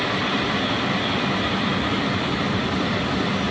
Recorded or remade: recorded